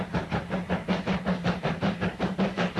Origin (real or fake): fake